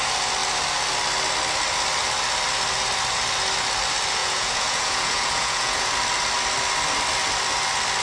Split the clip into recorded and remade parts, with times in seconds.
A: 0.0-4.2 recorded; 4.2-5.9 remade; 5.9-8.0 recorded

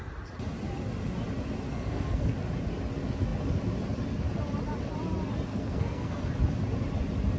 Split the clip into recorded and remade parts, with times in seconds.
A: 0.0-1.7 recorded; 1.7-2.3 remade; 2.3-5.5 recorded; 5.5-6.3 remade; 6.3-7.4 recorded

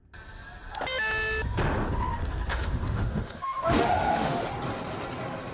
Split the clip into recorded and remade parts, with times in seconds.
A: 0.0-2.5 recorded; 2.5-4.4 remade; 4.4-5.5 recorded

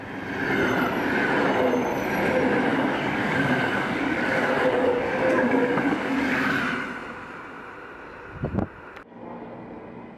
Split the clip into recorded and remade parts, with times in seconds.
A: 0.0-2.7 recorded; 2.7-6.6 remade; 6.6-10.2 recorded

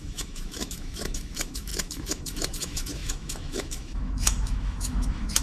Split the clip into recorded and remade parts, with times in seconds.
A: 0.0-5.4 remade

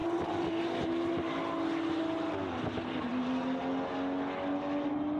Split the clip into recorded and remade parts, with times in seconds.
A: 0.0-5.2 recorded